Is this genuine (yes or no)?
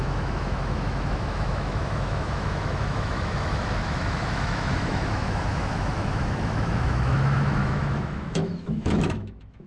no